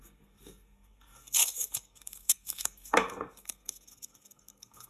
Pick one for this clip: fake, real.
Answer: fake